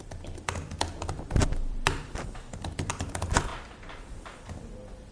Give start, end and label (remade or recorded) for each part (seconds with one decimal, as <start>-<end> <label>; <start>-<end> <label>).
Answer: 0.0-1.4 recorded; 1.4-2.9 remade; 2.9-3.5 recorded; 3.5-4.5 remade; 4.5-5.1 recorded